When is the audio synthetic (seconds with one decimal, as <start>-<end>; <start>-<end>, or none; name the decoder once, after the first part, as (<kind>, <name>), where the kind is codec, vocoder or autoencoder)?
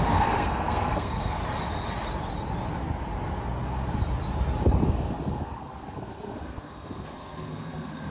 0.0-1.4 (codec, SNAC); 4.9-8.1